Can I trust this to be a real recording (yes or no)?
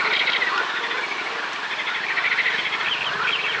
yes